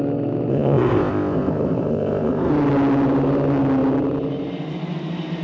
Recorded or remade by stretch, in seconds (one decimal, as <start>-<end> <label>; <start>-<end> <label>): 0.0-0.5 recorded; 0.5-2.5 remade; 2.5-5.4 recorded